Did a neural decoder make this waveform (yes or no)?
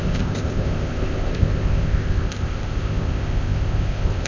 yes